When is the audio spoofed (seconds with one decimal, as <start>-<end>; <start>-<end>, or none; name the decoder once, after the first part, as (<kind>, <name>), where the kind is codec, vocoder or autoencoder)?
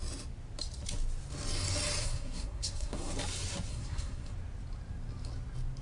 2.0-3.1 (codec, SNAC); 3.7-4.3